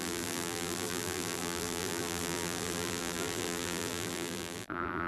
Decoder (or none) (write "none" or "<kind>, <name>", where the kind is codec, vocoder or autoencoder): vocoder, BigVGAN v2